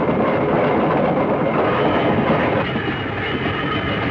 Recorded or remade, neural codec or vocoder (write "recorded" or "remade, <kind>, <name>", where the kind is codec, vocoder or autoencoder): recorded